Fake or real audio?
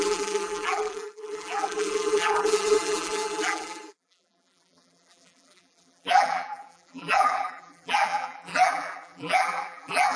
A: fake